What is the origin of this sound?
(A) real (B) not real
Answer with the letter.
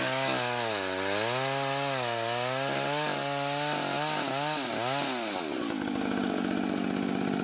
A